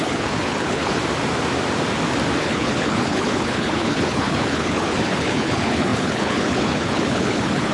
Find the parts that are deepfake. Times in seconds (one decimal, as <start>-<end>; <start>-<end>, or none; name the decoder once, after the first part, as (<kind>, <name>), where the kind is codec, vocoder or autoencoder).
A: 0.0-1.0 (codec, HILCodec); 2.4-7.7